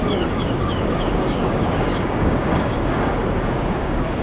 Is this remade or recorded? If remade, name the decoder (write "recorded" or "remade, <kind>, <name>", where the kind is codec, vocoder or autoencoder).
remade, codec, DAC